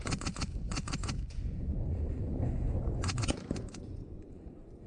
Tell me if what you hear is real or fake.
fake